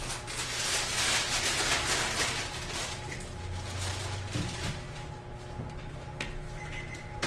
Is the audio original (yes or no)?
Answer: yes